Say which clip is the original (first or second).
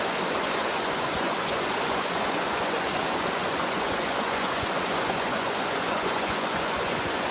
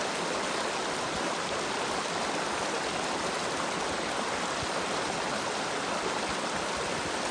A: second